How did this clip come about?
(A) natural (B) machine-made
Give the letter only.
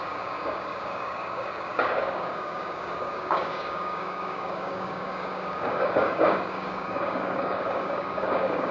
B